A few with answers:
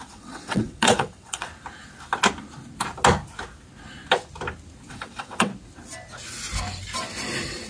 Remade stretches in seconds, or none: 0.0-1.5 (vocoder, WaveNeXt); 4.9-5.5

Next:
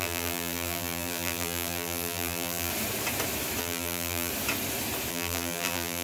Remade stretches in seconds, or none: 0.0-2.7 (vocoder, BigVGAN v2); 3.6-4.3; 5.1-6.0